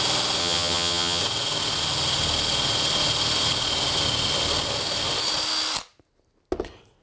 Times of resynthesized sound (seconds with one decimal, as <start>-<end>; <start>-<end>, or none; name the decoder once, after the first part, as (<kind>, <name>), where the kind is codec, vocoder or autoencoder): 0.4-1.2 (vocoder, HiFi-GAN)